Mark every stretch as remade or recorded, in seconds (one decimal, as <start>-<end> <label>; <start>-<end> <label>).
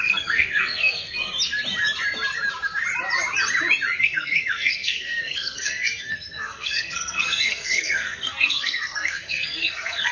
0.0-1.3 remade; 1.3-4.0 recorded; 4.0-10.1 remade